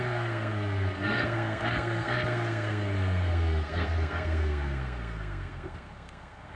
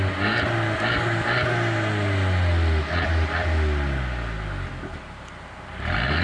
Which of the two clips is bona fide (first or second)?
second